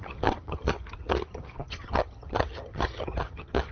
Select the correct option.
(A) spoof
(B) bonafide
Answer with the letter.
A